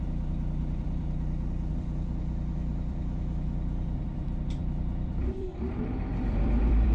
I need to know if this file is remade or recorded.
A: remade